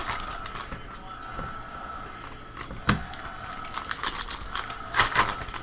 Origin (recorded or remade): recorded